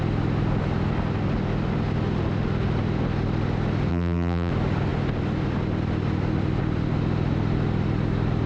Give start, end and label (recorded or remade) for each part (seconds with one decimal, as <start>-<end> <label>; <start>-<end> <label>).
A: 0.0-3.9 recorded; 3.9-4.5 remade; 4.5-8.5 recorded